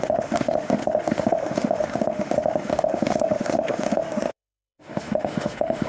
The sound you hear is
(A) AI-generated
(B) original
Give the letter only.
A